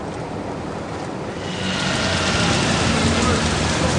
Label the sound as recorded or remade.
recorded